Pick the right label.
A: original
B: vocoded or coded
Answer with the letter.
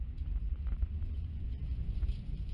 B